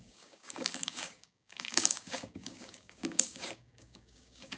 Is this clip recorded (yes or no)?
no